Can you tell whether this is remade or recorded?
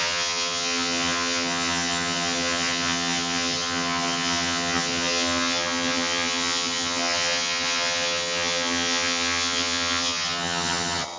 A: remade